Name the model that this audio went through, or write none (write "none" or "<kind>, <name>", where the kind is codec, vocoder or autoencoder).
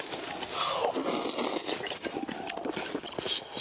none